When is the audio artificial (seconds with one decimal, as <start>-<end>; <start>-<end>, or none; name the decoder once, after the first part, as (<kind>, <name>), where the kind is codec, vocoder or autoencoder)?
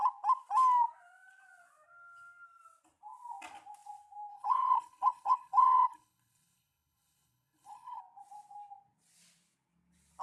4.3-8.0 (codec, HILCodec)